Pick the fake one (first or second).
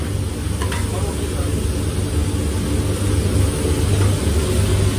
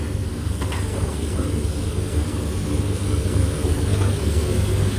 second